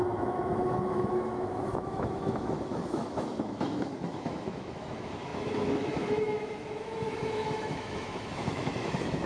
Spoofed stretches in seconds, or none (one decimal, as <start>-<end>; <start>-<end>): 0.0-9.3

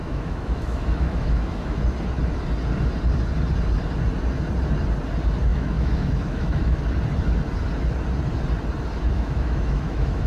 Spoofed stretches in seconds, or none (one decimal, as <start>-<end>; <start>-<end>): 0.0-1.8; 5.5-6.8; 9.1-10.3

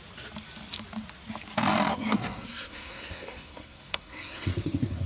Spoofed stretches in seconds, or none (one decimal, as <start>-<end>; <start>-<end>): 1.9-5.1

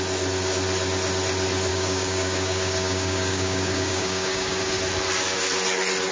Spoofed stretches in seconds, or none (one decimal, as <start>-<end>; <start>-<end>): 1.7-4.6

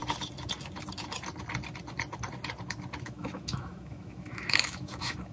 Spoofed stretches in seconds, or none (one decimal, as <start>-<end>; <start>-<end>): 3.0-5.3

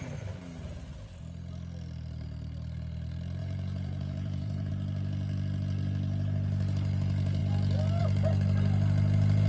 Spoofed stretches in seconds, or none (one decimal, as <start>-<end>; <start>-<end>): 3.4-4.7

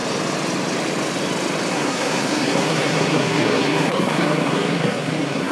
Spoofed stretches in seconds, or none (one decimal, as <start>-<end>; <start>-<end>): 1.7-5.5

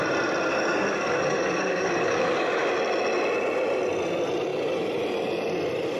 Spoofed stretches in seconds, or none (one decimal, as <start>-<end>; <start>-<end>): 0.5-2.7